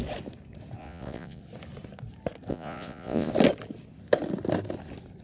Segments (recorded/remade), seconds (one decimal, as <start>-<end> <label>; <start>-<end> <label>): 0.0-0.8 recorded; 0.8-1.4 remade; 1.4-2.5 recorded; 2.5-3.3 remade; 3.3-5.2 recorded